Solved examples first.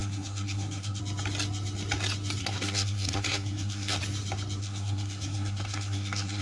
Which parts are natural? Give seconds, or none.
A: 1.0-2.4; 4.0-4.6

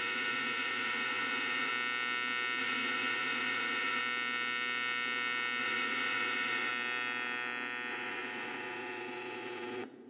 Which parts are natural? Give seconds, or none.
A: 1.7-2.6; 4.0-5.6; 6.7-7.9

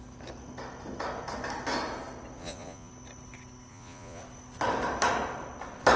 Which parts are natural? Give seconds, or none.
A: 0.0-2.4; 2.9-3.7; 4.2-6.0